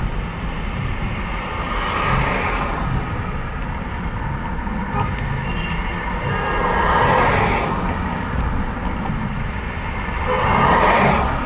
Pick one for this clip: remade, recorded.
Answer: recorded